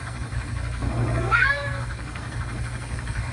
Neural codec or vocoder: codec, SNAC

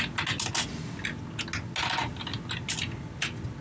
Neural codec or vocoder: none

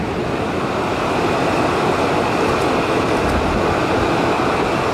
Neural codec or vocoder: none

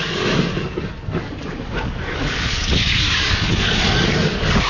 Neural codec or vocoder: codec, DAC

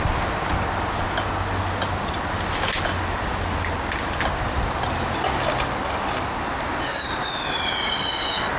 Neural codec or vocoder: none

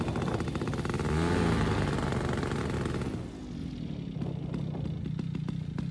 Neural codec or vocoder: none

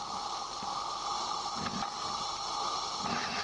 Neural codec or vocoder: none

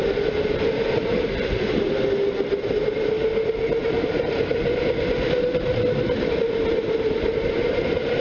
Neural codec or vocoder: none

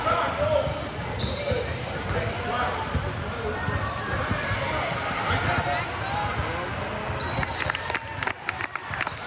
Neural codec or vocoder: none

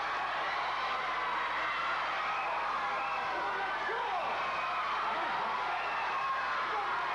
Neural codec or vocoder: none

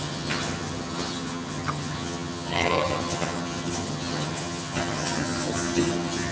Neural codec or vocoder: vocoder, HiFi-GAN